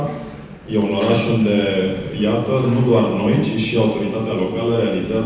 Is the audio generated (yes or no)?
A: no